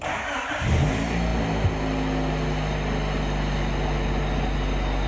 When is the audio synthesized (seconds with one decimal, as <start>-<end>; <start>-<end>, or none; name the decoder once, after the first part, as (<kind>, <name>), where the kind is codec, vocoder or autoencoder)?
none